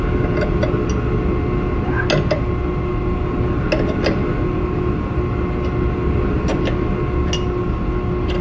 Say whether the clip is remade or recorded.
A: recorded